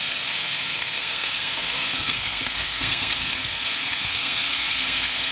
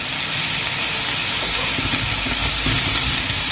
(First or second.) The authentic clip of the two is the second